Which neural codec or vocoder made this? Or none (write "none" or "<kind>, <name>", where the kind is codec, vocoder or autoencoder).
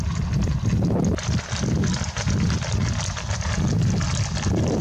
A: none